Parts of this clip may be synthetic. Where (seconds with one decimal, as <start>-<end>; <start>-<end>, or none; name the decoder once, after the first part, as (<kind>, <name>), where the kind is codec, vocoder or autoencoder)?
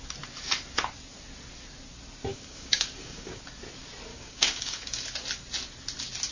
2.3-3.4 (codec, DAC); 4.1-5.0